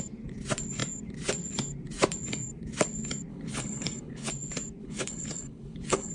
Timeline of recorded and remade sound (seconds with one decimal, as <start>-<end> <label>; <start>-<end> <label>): 0.0-3.3 recorded; 3.3-4.3 remade; 4.3-4.8 recorded; 4.8-6.1 remade